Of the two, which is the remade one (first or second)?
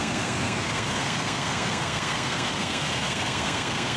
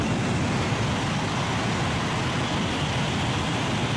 first